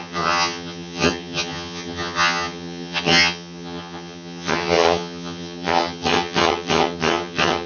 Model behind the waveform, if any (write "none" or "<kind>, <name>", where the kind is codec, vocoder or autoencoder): vocoder, HiFi-GAN